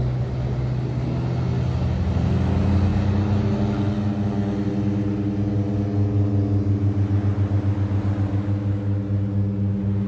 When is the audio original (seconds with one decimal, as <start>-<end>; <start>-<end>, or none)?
0.0-10.1